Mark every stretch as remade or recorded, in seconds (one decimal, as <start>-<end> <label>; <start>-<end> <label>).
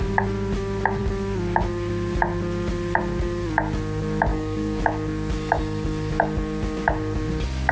0.0-4.3 recorded; 4.3-4.8 remade; 4.8-7.7 recorded